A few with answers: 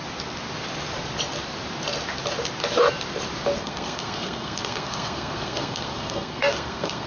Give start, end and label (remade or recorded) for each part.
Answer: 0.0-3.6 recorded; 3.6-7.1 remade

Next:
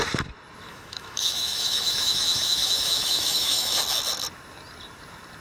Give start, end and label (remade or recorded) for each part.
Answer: 0.0-0.7 recorded; 0.7-3.8 remade; 3.8-5.4 recorded

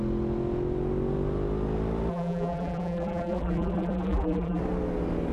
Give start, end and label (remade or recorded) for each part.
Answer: 0.0-2.1 recorded; 2.1-4.6 remade; 4.6-5.3 recorded

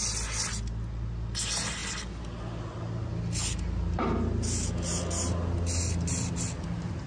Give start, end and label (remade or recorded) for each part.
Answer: 0.0-7.1 recorded

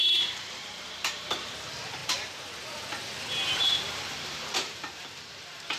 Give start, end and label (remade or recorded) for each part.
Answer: 0.0-5.8 remade

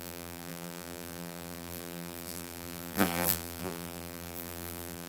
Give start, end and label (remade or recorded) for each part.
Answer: 0.0-5.1 remade

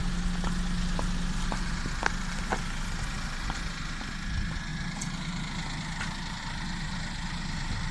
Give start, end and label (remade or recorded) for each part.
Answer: 0.0-7.9 recorded